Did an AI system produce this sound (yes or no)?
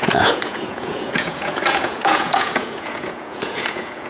yes